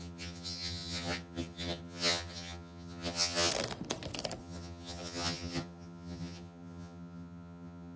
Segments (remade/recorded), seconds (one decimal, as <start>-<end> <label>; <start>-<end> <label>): 0.0-3.5 remade; 3.5-4.4 recorded; 4.4-8.0 remade